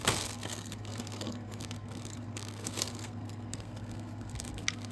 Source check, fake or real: fake